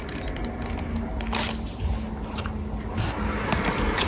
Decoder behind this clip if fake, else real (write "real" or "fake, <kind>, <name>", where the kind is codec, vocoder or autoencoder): real